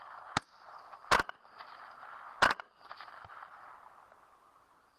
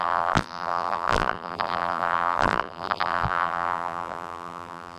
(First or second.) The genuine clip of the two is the first